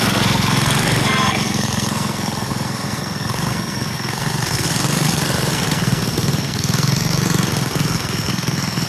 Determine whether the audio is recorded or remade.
remade